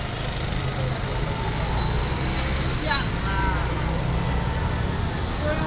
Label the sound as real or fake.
real